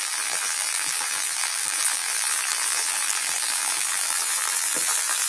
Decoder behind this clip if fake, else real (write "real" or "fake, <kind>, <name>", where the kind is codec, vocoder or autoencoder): fake, vocoder, BigVGAN v2